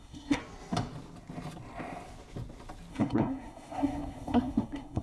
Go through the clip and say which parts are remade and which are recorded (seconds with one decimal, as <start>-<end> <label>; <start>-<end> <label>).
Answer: 0.0-0.4 remade; 0.4-2.9 recorded; 2.9-5.0 remade